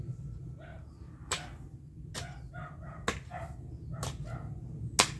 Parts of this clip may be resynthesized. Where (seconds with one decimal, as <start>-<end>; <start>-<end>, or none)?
0.7-1.4